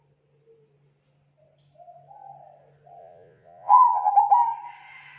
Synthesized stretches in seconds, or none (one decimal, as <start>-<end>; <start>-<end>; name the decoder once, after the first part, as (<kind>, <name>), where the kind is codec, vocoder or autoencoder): 3.0-4.1 (vocoder, Vocos)